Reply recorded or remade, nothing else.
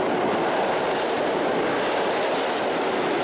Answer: recorded